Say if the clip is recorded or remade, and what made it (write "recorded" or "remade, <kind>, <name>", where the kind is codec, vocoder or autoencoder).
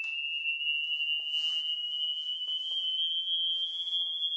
recorded